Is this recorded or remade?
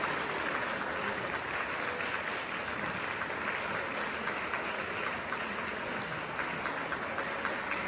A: recorded